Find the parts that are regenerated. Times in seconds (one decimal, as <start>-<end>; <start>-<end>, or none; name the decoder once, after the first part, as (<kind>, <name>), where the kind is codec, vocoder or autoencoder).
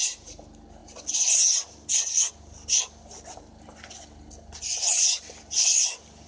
none